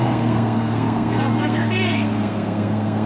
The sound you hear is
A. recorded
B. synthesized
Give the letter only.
B